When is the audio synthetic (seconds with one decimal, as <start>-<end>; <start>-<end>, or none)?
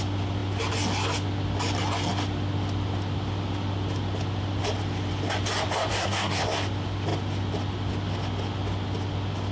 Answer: 5.9-6.4